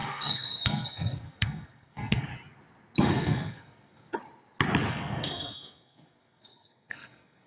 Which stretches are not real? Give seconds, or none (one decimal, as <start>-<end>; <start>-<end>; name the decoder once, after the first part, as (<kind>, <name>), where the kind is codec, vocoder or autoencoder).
0.0-2.3 (codec, SNAC); 3.0-4.1; 4.9-7.5